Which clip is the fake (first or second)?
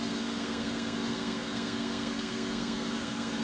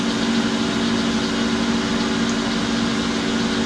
first